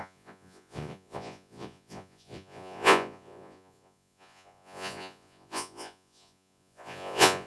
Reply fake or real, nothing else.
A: fake